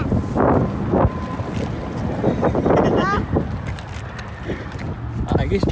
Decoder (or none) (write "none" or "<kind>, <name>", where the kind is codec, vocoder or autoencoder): none